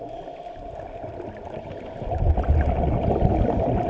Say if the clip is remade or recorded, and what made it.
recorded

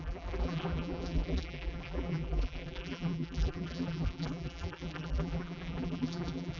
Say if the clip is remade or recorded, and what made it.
remade, vocoder, BigVGAN v2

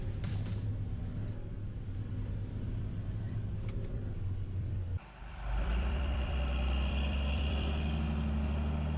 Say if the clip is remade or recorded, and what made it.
remade, vocoder, BigVGAN v2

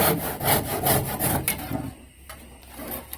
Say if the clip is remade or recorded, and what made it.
remade, vocoder, BigVGAN v2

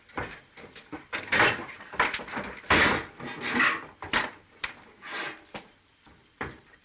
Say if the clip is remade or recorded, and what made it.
recorded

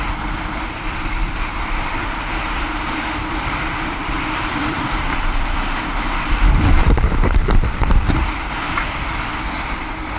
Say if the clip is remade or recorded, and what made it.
remade, vocoder, BigVGAN v2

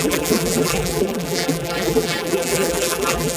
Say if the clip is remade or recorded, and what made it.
remade, vocoder, BigVGAN v2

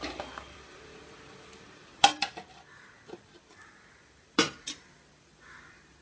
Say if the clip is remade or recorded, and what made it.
remade, vocoder, BigVGAN v2